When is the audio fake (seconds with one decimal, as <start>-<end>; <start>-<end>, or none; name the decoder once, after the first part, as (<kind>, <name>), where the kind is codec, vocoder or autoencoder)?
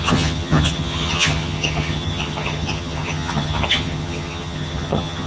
0.0-5.3 (vocoder, HiFi-GAN)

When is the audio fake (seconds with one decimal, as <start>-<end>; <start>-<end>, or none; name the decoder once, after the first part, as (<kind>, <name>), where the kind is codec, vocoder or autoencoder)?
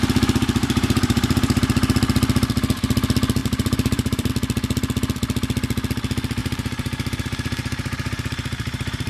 0.6-1.6 (vocoder, BigVGAN v2); 3.4-4.3; 6.4-9.1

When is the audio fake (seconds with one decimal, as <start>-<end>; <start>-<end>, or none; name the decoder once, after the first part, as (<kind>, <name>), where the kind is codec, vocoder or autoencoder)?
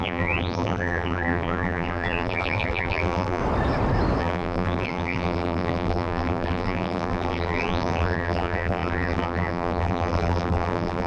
0.0-3.4 (vocoder, BigVGAN v2); 4.2-11.1